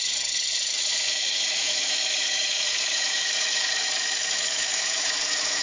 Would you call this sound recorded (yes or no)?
no